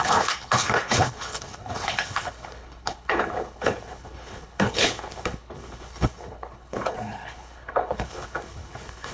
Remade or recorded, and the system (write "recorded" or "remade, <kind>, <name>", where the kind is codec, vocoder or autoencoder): remade, codec, HILCodec